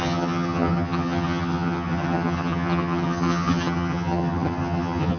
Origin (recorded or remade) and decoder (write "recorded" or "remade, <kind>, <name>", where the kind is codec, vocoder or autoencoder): remade, vocoder, HiFi-GAN